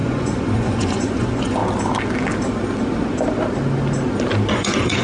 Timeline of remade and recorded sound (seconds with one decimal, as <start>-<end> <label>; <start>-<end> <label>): 0.0-1.6 remade; 1.6-4.5 recorded; 4.5-5.0 remade